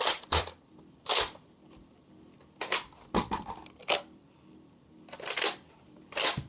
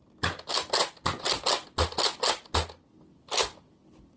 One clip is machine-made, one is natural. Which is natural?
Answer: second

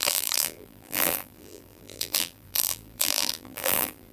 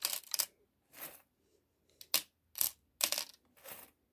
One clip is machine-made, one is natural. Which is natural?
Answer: second